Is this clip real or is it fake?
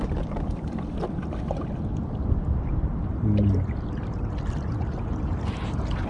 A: real